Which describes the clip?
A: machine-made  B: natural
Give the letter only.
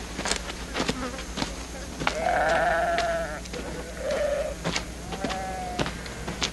B